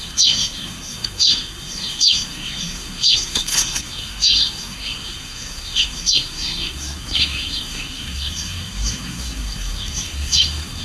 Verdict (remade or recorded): remade